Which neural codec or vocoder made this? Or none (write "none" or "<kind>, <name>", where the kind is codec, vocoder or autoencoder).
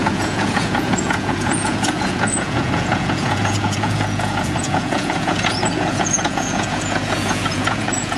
vocoder, Vocos